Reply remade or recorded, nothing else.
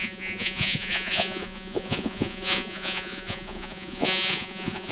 remade